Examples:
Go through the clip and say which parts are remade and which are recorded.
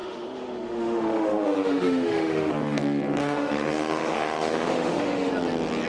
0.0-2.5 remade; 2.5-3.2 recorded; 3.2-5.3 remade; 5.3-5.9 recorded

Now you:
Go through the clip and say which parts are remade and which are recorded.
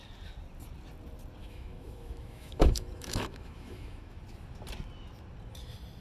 0.0-1.4 recorded; 1.4-4.2 remade; 4.2-6.0 recorded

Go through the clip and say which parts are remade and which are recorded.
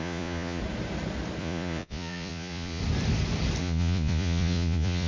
0.0-0.6 remade; 0.6-1.4 recorded; 1.4-2.8 remade; 2.8-3.6 recorded; 3.6-5.1 remade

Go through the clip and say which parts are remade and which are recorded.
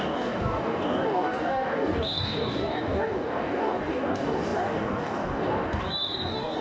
0.0-6.6 remade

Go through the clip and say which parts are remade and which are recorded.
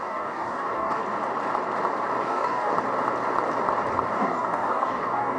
0.0-1.0 remade; 1.0-2.2 recorded; 2.2-2.7 remade; 2.7-4.1 recorded; 4.1-5.4 remade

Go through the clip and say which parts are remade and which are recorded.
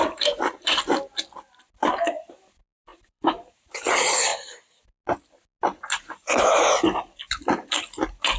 0.0-0.8 remade; 0.8-2.9 recorded; 2.9-3.7 remade; 3.7-8.4 recorded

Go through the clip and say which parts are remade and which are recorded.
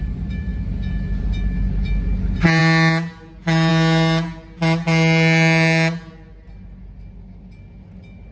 0.0-8.3 recorded